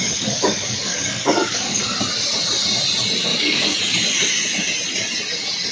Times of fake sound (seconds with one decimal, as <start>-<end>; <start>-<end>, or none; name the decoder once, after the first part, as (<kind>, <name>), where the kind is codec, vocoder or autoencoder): 0.0-1.8 (codec, DAC); 3.3-3.8